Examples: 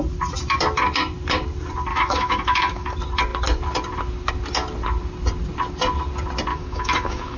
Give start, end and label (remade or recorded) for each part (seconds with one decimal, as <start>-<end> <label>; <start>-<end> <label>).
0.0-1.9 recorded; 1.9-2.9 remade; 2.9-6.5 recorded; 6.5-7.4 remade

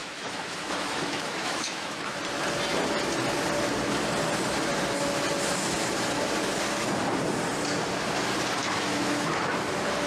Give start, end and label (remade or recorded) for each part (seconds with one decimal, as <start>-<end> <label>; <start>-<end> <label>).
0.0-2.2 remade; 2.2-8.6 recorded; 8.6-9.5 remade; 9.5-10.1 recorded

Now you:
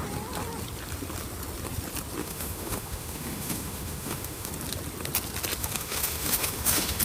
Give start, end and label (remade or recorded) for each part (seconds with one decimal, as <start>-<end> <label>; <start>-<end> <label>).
0.0-2.2 recorded; 2.2-4.5 remade; 4.5-5.6 recorded; 5.6-7.0 remade